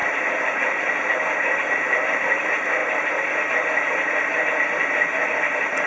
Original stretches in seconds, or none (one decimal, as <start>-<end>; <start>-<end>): 2.2-5.9